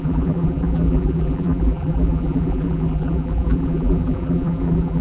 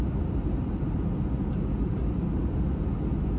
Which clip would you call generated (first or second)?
first